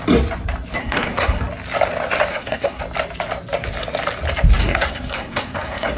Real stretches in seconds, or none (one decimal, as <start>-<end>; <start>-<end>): 0.0-0.8; 1.4-2.3; 2.8-4.6